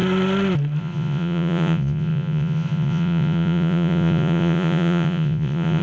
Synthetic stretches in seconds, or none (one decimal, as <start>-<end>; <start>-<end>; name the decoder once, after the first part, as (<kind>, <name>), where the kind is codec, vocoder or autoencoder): 0.8-5.8 (vocoder, Vocos)